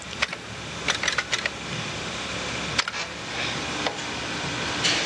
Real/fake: real